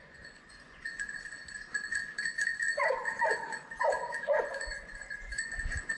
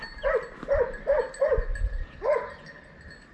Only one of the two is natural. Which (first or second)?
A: second